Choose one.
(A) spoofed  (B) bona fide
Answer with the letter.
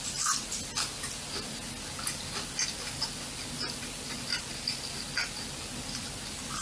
B